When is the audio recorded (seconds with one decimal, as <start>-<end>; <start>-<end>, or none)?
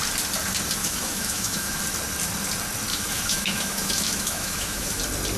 0.0-0.8; 1.8-2.9; 5.0-5.4